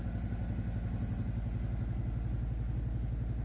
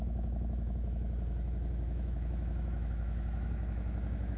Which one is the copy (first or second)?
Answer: second